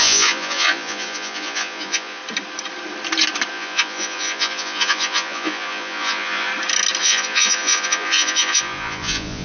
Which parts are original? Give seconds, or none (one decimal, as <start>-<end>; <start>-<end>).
2.2-3.5; 6.5-7.0